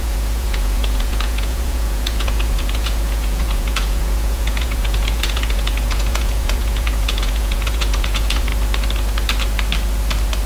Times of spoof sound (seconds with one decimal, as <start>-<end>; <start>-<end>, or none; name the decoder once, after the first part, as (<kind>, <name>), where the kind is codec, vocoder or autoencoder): 0.0-8.5 (vocoder, Vocos)